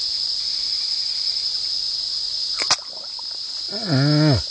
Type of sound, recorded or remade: recorded